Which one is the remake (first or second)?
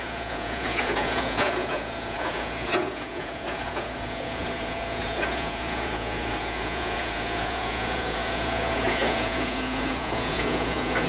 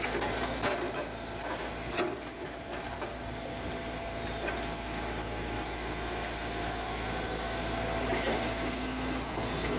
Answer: first